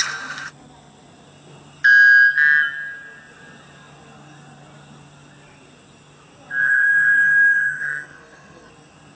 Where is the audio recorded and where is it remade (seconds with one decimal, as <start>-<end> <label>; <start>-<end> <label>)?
0.0-6.6 recorded; 6.6-8.7 remade; 8.7-9.1 recorded